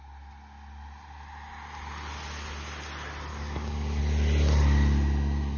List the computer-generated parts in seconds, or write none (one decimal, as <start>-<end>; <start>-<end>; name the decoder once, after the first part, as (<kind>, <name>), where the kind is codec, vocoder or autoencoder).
3.3-4.0 (codec, DAC)